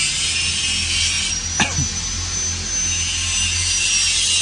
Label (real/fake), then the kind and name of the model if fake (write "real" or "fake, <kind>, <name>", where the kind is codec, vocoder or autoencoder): real